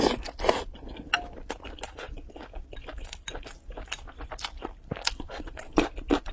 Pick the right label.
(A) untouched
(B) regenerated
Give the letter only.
A